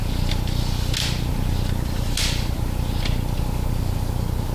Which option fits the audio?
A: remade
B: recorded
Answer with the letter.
B